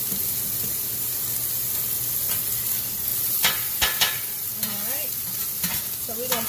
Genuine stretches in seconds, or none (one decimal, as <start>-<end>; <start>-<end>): 0.0-3.1; 5.8-6.5